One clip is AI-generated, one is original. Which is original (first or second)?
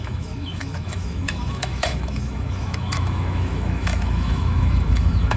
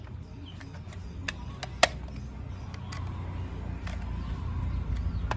second